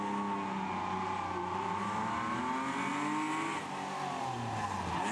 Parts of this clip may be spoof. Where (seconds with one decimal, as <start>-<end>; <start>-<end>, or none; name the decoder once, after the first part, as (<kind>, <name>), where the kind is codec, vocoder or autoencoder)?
none